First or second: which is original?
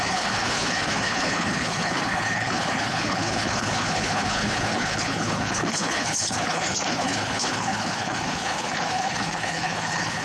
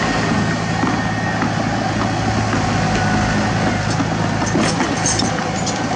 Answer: second